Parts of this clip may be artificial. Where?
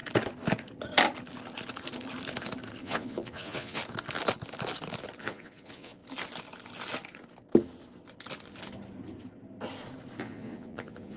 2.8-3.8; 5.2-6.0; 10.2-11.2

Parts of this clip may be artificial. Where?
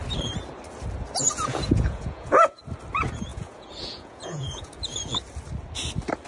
1.2-2.6; 3.3-5.0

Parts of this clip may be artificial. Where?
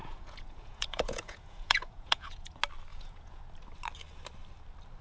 0.0-2.5; 2.9-3.4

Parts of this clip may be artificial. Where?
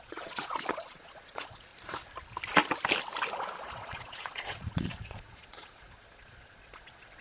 0.0-1.7; 3.6-7.2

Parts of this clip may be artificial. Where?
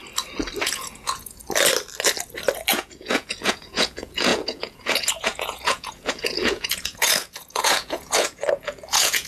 0.6-1.4; 2.7-9.3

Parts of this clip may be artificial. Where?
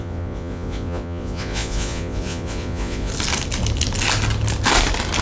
0.0-3.1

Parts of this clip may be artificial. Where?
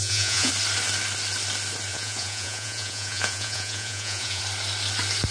0.0-0.5; 1.9-4.4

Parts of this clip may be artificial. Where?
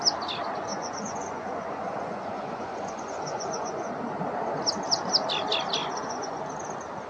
0.7-3.9; 5.8-6.4